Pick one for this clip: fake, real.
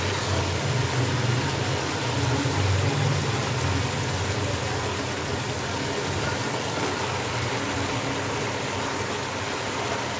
real